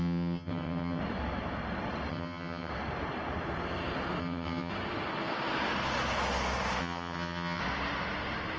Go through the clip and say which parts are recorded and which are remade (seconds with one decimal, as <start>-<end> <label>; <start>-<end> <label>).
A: 0.0-1.0 remade; 1.0-2.1 recorded; 2.1-2.7 remade; 2.7-4.2 recorded; 4.2-4.7 remade; 4.7-6.8 recorded; 6.8-7.6 remade; 7.6-8.6 recorded